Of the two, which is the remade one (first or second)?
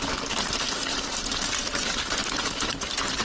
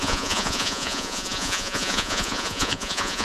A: second